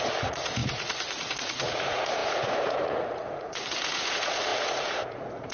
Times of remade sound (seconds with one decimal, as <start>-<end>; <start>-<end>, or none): 0.0-5.5